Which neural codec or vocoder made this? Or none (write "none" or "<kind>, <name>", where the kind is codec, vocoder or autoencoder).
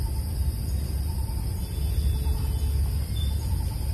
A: none